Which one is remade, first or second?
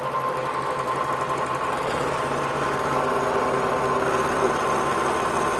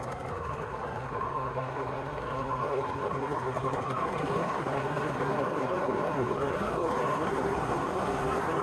second